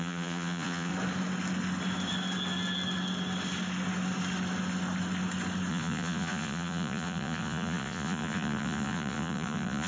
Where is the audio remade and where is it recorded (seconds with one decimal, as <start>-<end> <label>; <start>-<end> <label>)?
0.0-0.9 remade; 0.9-5.7 recorded; 5.7-9.9 remade